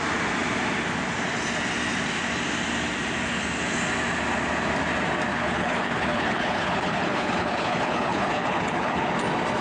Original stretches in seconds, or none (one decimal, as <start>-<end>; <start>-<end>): 0.0-5.3; 9.1-9.6